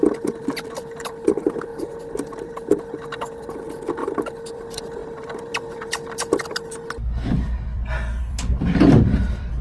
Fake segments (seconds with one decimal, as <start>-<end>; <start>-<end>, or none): 0.0-4.0; 4.5-9.6